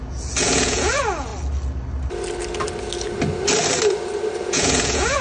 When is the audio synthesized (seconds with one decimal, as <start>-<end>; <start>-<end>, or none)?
0.0-1.3; 4.4-5.2